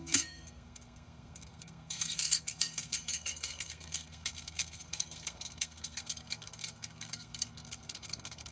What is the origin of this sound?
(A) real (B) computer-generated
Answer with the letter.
B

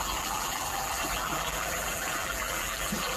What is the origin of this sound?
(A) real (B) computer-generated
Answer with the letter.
B